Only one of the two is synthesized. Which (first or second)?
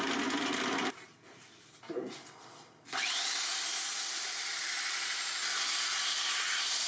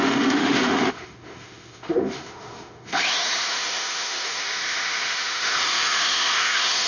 second